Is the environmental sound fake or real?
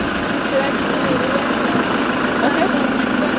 real